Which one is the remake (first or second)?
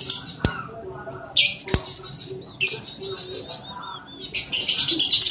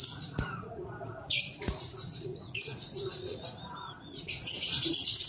second